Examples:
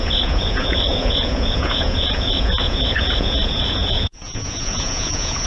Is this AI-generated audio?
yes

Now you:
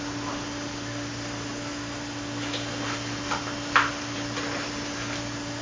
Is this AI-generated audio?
no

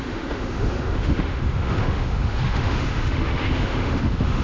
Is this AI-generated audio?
yes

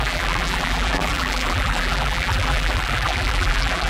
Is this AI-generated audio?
yes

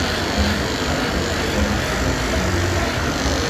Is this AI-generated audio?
no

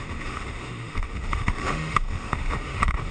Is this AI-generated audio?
yes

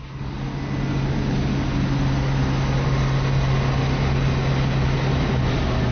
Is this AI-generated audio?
no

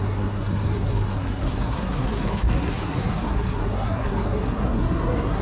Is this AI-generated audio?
yes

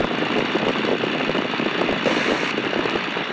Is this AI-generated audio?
no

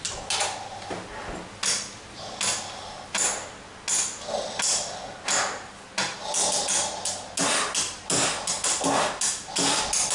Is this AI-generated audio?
no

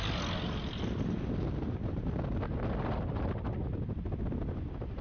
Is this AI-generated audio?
no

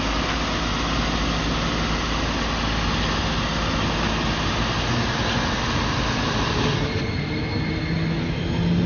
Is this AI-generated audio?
no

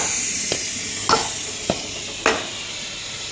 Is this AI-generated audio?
no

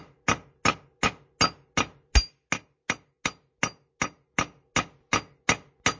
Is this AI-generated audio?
no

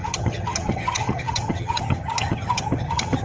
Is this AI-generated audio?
yes